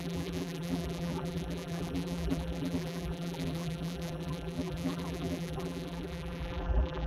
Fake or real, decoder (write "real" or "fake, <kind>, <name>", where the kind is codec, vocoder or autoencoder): fake, vocoder, BigVGAN v2